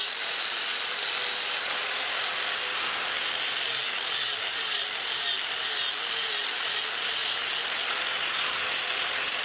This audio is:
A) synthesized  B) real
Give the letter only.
B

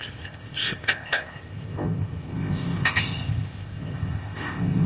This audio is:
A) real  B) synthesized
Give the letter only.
B